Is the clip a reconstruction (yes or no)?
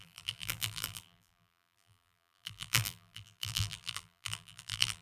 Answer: yes